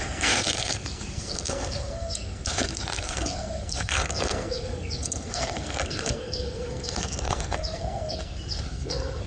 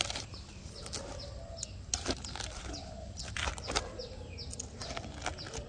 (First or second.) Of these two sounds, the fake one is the first